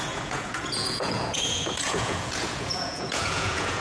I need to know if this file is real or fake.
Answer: fake